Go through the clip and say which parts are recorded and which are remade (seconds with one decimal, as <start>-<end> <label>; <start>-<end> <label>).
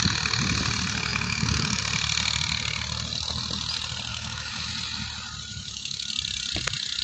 0.0-1.1 recorded; 1.1-1.8 remade; 1.8-4.1 recorded; 4.1-4.7 remade; 4.7-5.5 recorded; 5.5-6.1 remade; 6.1-7.0 recorded